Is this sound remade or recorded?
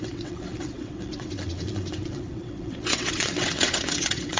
remade